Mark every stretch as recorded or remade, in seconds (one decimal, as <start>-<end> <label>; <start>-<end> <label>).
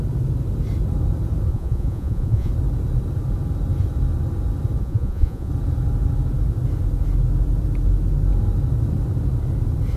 0.0-1.5 recorded; 1.5-2.5 remade; 2.5-4.8 recorded; 4.8-5.5 remade; 5.5-10.0 recorded